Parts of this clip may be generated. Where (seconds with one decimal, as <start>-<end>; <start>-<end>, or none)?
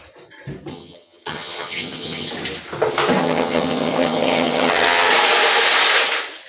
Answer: 0.7-2.3; 3.2-5.1